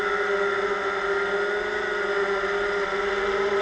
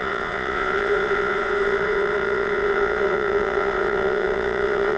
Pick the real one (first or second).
first